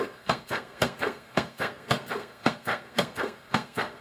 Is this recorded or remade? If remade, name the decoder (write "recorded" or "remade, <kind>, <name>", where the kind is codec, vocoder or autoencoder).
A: remade, codec, SNAC